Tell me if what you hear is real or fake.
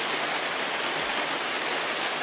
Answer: real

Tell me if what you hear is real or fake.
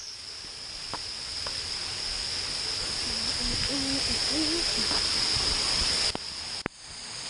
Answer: real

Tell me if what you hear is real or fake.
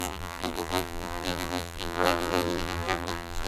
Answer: fake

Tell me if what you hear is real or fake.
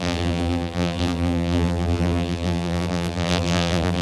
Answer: fake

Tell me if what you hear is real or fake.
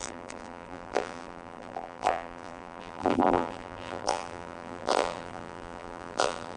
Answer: fake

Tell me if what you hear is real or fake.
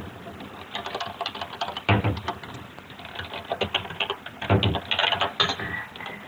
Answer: real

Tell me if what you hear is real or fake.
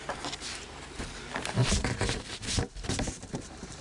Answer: fake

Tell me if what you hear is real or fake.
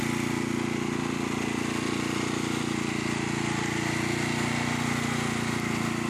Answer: real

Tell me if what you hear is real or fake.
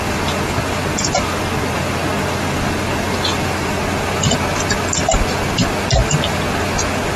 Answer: real